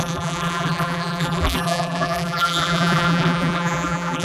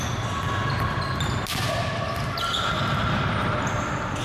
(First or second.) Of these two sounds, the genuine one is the second